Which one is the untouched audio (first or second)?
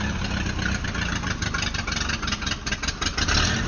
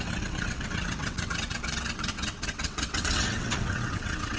first